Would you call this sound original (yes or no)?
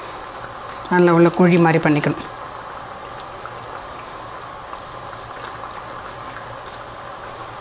yes